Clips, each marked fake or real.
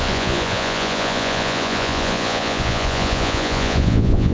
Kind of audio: fake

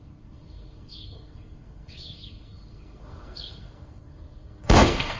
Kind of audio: fake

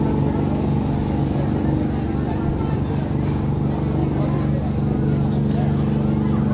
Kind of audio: real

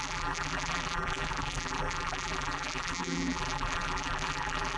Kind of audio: fake